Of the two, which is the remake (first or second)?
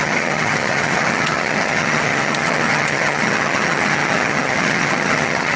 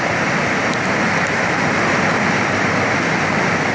first